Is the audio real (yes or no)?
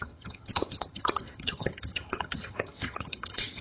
no